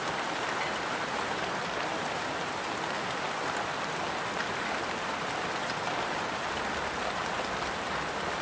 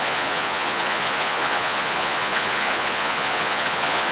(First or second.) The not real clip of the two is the second